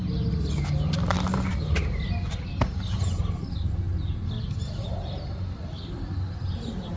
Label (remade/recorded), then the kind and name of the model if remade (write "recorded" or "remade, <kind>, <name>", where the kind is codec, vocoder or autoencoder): recorded